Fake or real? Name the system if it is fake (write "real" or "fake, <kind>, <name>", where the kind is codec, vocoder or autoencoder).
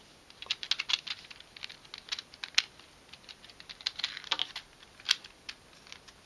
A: real